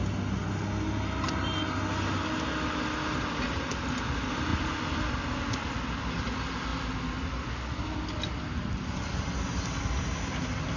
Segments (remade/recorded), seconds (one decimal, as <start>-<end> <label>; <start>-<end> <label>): 0.0-10.8 recorded